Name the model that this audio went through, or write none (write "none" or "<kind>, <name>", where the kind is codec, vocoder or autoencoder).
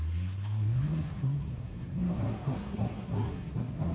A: codec, SNAC